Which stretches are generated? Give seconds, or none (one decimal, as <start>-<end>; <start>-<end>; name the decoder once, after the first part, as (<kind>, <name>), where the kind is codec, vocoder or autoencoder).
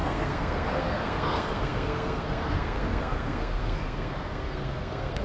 0.0-5.2 (codec, SNAC)